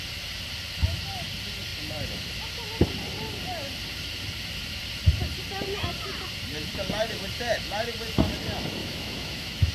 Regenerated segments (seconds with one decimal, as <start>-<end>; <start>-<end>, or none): 8.8-9.7

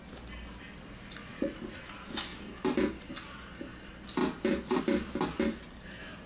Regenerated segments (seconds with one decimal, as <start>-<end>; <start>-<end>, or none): 1.3-1.8

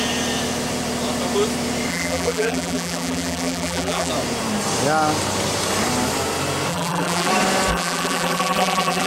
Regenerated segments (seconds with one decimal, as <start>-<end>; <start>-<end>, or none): 1.9-4.1; 6.7-7.3; 7.7-9.1

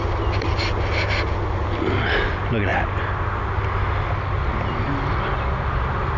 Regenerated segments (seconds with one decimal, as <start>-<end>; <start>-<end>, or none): none

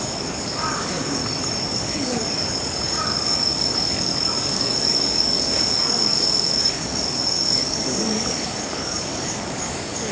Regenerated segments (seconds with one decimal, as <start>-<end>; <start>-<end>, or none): 0.0-1.2; 1.7-10.1

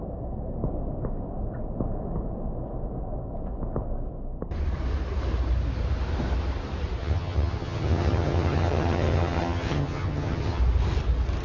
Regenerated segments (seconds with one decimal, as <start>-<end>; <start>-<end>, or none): 7.0-10.6